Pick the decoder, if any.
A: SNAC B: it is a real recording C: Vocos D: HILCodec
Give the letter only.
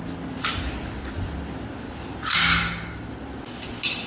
B